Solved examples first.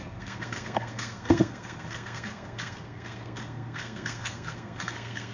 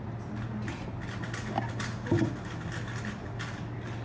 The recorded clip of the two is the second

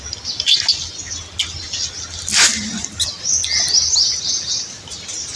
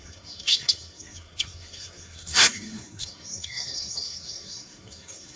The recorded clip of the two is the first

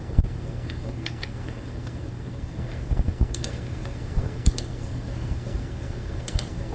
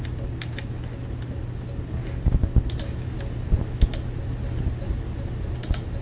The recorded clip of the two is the second